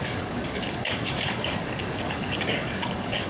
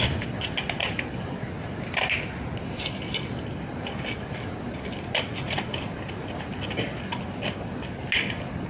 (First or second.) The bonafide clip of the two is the second